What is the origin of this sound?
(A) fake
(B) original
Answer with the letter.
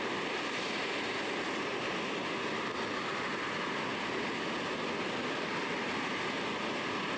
B